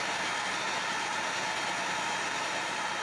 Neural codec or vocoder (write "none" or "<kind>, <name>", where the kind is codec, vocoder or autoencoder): none